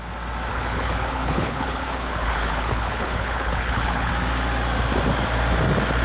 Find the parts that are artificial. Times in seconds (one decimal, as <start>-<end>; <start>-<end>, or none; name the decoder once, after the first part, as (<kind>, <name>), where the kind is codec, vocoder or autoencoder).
0.5-4.1 (codec, HILCodec)